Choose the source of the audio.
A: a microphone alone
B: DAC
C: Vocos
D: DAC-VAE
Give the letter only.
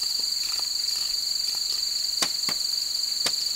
A